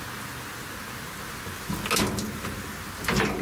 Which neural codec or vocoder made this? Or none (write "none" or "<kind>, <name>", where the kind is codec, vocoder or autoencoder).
none